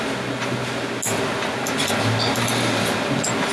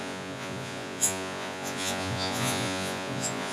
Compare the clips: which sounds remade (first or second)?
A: second